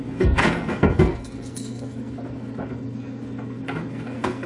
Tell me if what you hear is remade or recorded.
remade